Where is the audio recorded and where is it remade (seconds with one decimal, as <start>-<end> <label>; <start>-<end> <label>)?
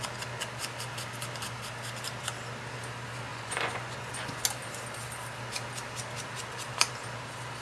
0.0-3.3 recorded; 3.3-4.4 remade; 4.4-7.6 recorded